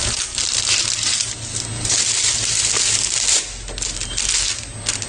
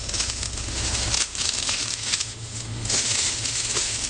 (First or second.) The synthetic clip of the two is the second